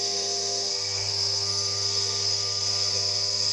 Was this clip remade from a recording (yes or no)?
yes